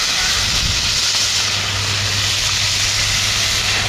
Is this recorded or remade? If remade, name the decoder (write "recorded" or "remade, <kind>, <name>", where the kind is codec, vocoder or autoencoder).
recorded